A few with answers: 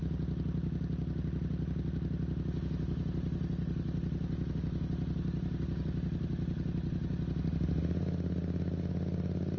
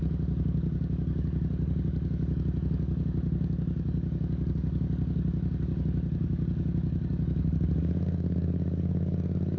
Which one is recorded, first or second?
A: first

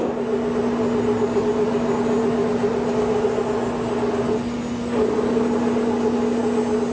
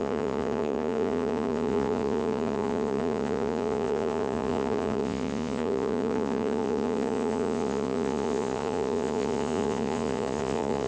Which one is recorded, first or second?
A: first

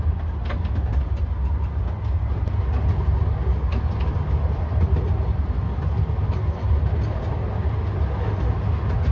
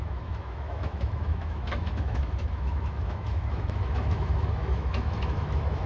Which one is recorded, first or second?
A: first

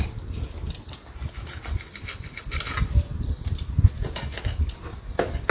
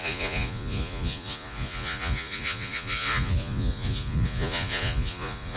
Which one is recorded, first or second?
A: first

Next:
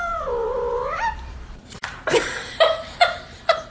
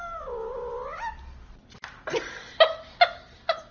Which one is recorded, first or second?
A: second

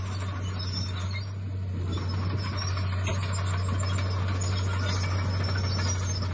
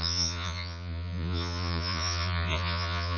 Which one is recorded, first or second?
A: first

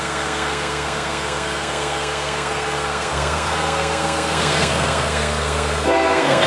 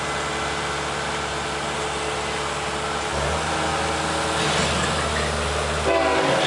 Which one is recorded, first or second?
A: second